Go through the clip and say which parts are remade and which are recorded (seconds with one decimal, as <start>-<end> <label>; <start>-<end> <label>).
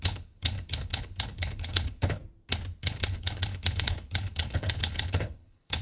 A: 0.0-2.2 remade; 2.2-2.8 recorded; 2.8-5.8 remade